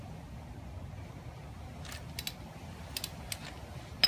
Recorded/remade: recorded